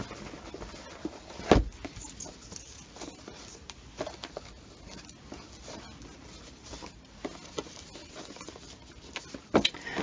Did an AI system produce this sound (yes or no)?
no